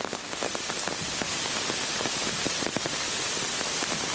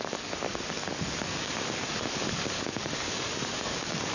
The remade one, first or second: second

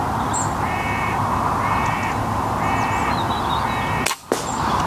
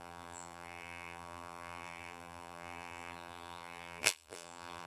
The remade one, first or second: second